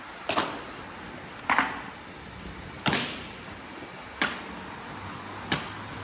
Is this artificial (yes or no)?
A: no